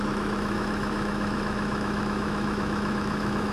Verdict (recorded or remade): remade